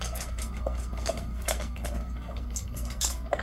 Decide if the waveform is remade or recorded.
remade